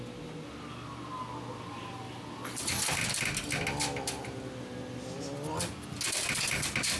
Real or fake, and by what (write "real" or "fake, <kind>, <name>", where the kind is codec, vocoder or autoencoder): real